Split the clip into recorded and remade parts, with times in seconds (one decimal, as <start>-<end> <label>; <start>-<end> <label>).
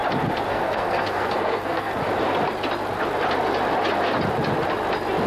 0.0-0.5 recorded; 0.5-1.9 remade; 1.9-5.3 recorded